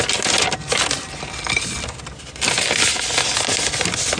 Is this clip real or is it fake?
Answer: real